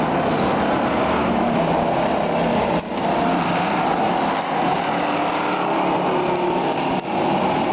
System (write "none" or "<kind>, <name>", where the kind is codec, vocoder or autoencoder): none